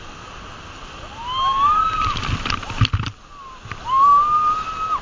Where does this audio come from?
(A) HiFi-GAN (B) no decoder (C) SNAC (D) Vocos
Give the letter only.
B